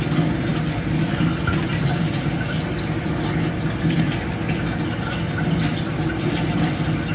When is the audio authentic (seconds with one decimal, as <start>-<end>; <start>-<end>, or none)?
0.0-7.1